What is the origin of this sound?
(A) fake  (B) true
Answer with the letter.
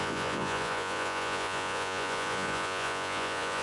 A